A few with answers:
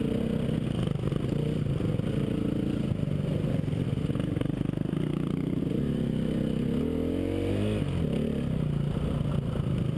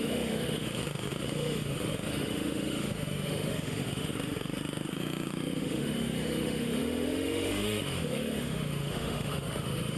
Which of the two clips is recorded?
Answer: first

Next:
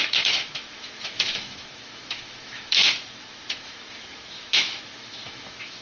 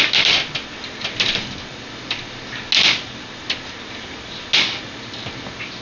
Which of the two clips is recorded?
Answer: second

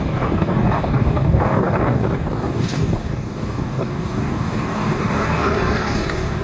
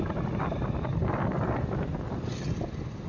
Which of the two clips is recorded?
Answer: second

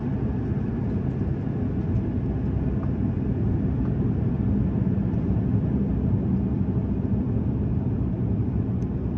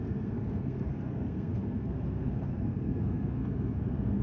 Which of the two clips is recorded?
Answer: first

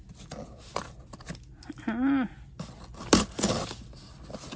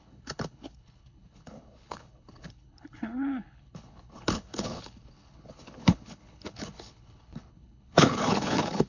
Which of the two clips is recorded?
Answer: first